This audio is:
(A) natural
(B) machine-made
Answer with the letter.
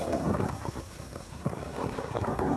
B